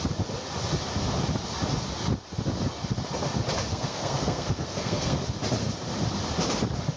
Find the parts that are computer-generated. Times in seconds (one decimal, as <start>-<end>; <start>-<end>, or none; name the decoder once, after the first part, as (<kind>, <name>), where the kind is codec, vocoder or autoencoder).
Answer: 3.7-5.2 (codec, SNAC)